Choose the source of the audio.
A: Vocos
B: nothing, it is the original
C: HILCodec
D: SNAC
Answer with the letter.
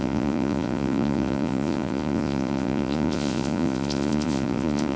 A